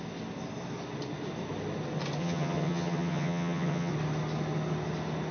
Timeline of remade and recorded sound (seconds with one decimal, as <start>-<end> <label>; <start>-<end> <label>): 0.0-2.2 recorded; 2.2-3.9 remade; 3.9-5.3 recorded